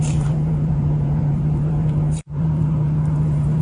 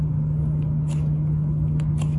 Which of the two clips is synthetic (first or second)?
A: first